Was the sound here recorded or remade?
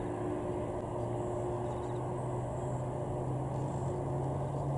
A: recorded